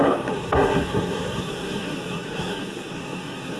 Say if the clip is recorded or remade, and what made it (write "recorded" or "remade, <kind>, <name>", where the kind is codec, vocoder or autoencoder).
remade, codec, SNAC